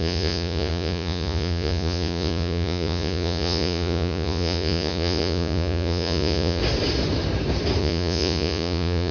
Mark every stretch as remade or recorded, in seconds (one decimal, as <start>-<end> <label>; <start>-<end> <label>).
0.0-6.6 remade; 6.6-7.8 recorded; 7.8-9.1 remade